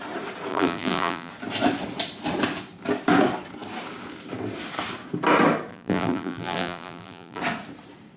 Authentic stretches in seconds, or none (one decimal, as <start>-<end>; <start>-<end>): 0.0-0.5; 1.3-5.7; 7.4-8.2